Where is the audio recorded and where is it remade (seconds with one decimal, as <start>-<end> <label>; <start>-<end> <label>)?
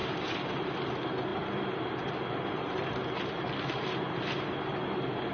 0.0-0.7 remade; 0.7-5.3 recorded